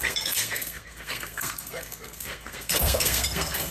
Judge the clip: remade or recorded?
remade